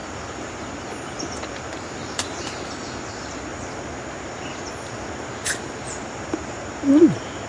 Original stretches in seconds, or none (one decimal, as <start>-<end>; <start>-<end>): 0.7-2.0; 2.6-7.5